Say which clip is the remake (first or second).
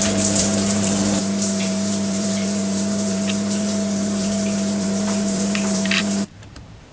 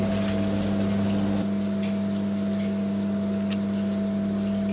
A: first